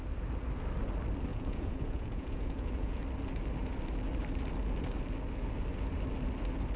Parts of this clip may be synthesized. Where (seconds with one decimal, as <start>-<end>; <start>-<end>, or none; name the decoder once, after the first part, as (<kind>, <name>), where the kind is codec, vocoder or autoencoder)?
1.3-3.0 (vocoder, Vocos)